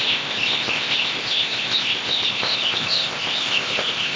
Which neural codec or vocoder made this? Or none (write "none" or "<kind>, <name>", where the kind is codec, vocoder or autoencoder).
codec, ZipCodec